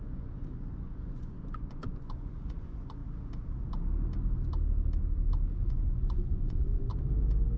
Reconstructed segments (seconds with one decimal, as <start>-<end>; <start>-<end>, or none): 0.0-3.0; 5.7-6.9